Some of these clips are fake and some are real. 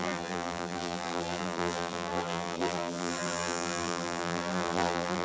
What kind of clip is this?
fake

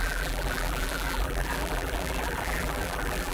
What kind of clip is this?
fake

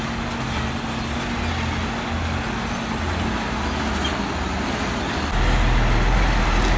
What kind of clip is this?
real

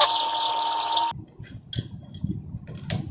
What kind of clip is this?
real